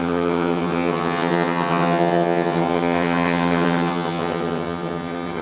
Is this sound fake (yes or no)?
yes